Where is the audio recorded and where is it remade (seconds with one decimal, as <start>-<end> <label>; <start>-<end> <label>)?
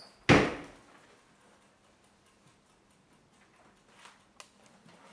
0.0-5.1 recorded